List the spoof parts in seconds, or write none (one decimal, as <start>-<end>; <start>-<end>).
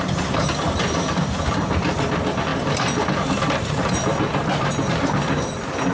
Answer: none